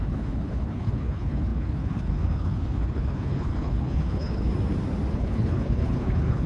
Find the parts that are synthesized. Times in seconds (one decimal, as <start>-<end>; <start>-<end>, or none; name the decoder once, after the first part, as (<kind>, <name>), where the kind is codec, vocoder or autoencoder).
0.0-4.5 (codec, HILCodec); 5.1-6.5